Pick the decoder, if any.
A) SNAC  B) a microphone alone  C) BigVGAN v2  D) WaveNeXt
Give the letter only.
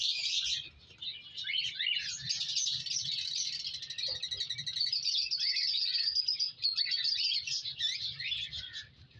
B